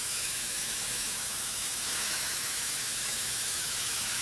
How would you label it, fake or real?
fake